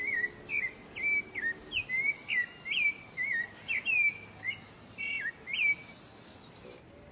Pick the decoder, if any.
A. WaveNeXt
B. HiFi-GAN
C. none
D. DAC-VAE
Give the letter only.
C